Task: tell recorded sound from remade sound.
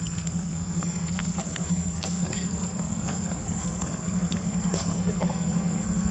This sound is remade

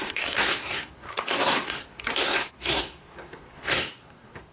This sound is remade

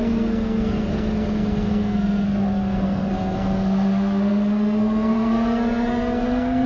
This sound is remade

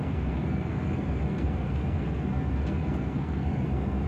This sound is remade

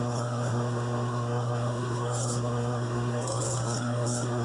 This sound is remade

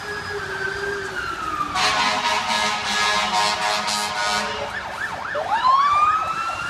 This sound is recorded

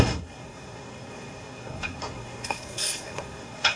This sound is remade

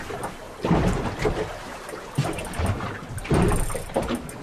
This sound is recorded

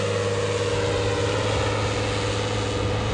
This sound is recorded